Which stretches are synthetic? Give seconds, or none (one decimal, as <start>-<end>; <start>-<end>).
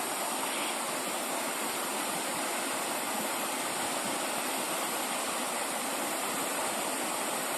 5.9-6.6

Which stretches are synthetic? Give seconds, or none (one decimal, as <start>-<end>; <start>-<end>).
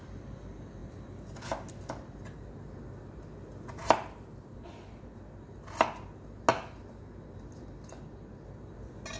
none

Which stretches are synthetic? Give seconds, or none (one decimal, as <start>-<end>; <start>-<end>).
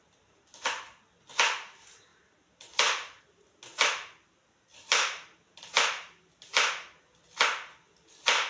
4.7-6.3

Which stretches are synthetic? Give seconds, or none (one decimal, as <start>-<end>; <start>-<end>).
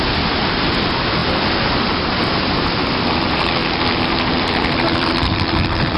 0.0-3.6; 4.3-6.0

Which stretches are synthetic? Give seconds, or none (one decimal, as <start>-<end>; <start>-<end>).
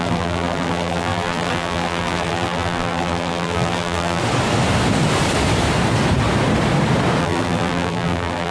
0.0-4.2; 7.2-8.5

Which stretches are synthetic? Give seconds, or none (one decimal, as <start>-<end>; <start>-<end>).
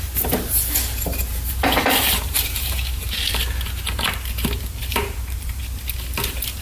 1.3-3.4; 4.8-5.6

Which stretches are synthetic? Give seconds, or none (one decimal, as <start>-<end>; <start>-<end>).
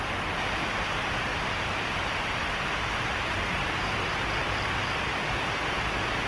1.3-5.1